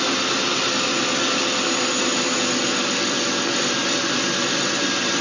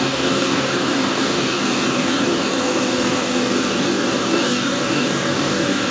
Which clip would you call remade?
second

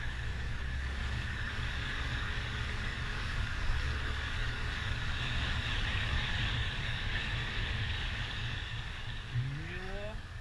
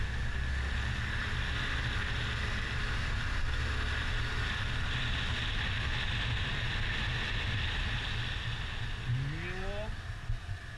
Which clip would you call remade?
first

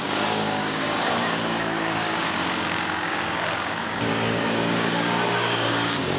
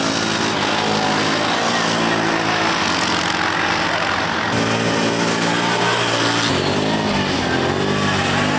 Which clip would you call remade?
first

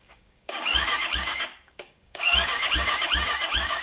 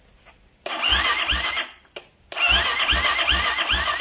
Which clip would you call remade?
first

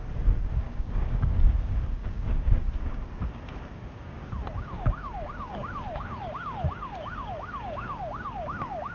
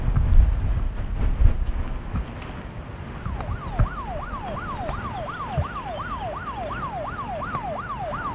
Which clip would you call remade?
first